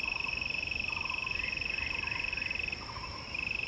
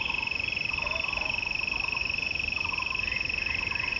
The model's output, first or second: first